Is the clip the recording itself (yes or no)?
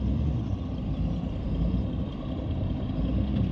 yes